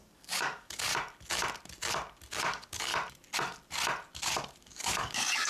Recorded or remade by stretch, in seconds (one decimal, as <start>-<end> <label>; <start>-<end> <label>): 0.0-0.9 remade; 0.9-2.3 recorded; 2.3-2.9 remade; 2.9-4.6 recorded; 4.6-5.5 remade